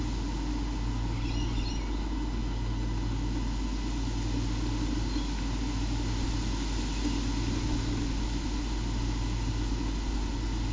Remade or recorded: recorded